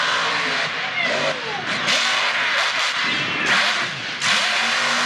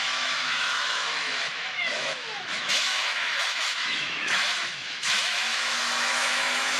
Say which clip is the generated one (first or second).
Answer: second